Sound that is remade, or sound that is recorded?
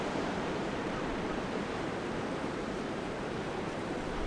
remade